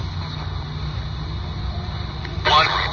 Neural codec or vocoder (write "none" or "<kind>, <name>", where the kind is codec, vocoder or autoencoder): none